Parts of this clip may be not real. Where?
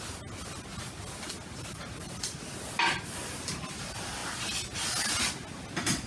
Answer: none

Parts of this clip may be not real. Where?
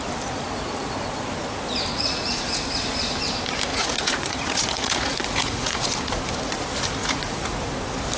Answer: 1.9-2.6 (vocoder, Vocos); 3.7-5.8; 7.0-7.6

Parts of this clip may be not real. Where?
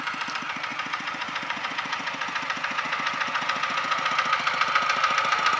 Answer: 0.7-4.1 (vocoder, Vocos)